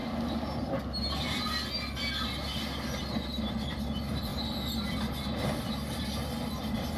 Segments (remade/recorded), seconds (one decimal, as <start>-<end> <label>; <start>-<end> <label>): 0.0-7.0 recorded